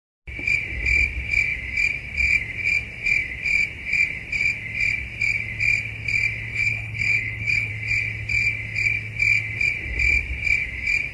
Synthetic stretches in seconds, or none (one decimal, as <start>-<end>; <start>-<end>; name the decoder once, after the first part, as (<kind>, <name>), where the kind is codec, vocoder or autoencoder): 6.5-7.7 (codec, HILCodec)